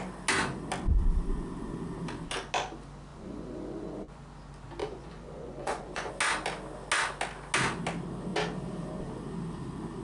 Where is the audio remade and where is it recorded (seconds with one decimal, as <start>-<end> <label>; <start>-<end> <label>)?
0.0-3.1 recorded; 3.1-4.2 remade; 4.2-4.8 recorded; 4.8-6.1 remade; 6.1-10.0 recorded